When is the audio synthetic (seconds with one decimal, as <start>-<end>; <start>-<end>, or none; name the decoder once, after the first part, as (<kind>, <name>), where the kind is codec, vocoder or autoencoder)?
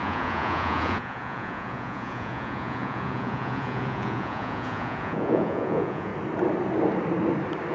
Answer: 0.0-6.1 (vocoder, Vocos)